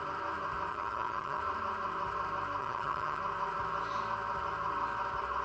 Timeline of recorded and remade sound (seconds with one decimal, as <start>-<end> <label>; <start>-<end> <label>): 0.0-0.7 recorded; 0.7-1.4 remade; 1.4-2.6 recorded; 2.6-3.2 remade; 3.2-5.4 recorded